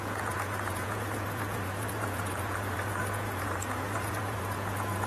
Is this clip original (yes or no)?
no